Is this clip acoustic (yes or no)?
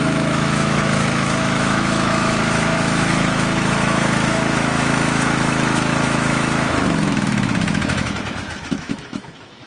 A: no